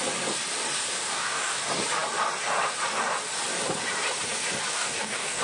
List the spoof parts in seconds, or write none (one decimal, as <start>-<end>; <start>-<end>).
1.1-1.6; 4.7-5.4